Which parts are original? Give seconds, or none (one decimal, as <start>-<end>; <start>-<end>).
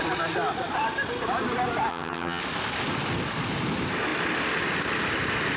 0.0-1.9; 2.4-5.6